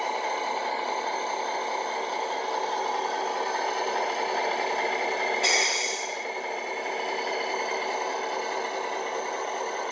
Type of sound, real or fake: real